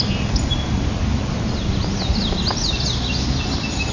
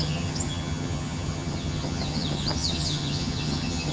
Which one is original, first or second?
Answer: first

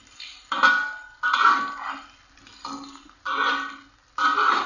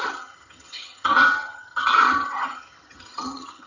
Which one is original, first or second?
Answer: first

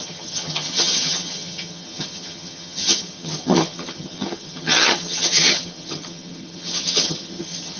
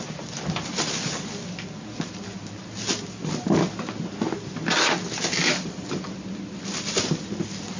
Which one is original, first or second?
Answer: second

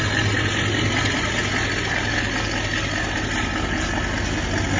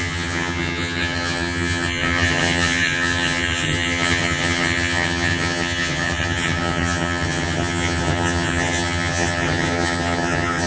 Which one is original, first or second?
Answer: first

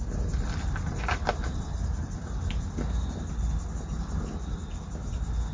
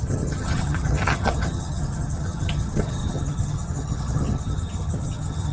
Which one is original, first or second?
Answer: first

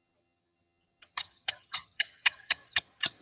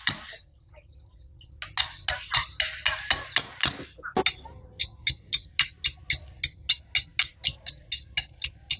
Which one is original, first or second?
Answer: second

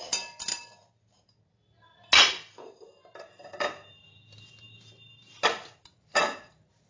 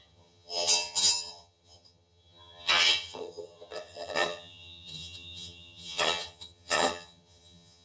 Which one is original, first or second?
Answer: first